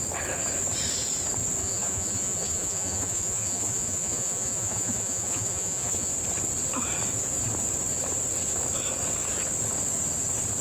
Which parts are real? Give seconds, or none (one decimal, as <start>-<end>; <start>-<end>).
0.0-1.6; 6.1-10.6